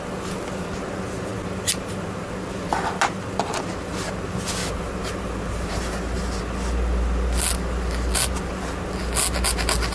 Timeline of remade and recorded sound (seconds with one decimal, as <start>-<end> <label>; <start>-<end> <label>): 0.0-4.6 recorded; 4.6-6.4 remade; 6.4-9.9 recorded